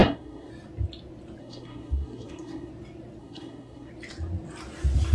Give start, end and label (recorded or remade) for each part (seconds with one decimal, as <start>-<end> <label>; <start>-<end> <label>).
0.0-0.5 remade; 0.5-1.4 recorded; 1.4-2.7 remade; 2.7-3.2 recorded; 3.2-3.9 remade; 3.9-5.1 recorded